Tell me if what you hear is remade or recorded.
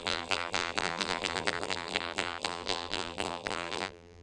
remade